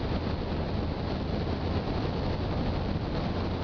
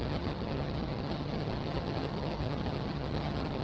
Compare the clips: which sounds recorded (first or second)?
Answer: first